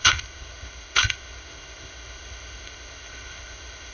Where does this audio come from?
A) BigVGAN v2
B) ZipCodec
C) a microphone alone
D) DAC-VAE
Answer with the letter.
B